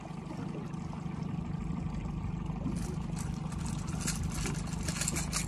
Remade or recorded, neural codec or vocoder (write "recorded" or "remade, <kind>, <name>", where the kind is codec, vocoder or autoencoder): recorded